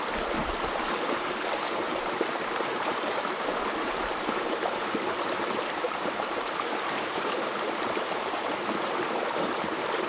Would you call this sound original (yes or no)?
no